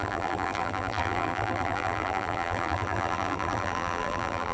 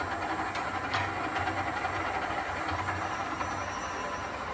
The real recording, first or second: second